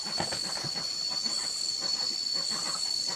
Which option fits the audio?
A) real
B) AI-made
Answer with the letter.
A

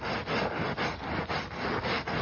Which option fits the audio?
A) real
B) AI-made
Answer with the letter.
A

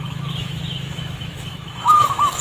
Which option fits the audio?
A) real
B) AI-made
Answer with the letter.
B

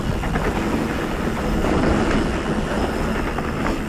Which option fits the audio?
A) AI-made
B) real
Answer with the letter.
B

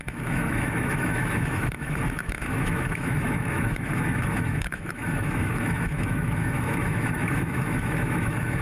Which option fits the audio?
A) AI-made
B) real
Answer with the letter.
A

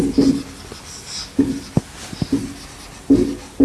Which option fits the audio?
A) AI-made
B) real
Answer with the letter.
B